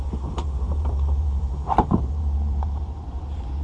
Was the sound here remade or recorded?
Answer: remade